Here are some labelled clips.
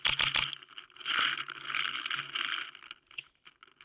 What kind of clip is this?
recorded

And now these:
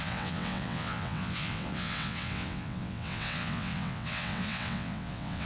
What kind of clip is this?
remade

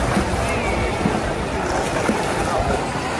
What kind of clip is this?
recorded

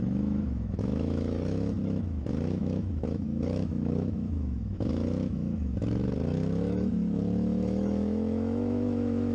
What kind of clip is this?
remade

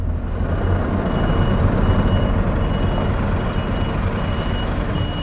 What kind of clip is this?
recorded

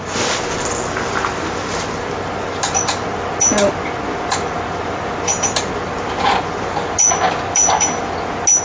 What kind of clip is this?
recorded